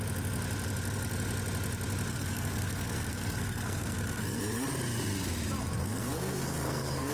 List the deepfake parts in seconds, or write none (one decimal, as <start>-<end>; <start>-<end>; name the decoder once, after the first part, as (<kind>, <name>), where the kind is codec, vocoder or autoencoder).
2.1-4.4 (codec, SNAC); 5.6-7.1